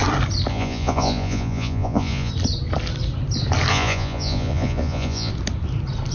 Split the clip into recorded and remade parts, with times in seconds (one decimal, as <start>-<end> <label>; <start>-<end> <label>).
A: 0.0-0.5 recorded; 0.5-2.3 remade; 2.3-3.7 recorded; 3.7-5.3 remade; 5.3-6.1 recorded